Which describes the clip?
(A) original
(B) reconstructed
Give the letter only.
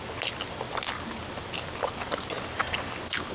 A